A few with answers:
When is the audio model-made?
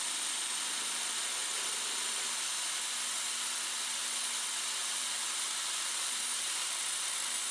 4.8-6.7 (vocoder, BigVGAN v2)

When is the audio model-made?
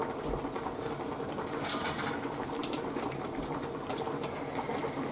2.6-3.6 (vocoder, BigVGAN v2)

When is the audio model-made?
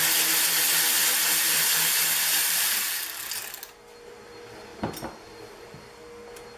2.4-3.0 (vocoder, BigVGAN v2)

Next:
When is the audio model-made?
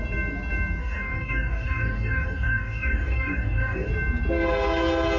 0.8-3.9 (codec, DAC)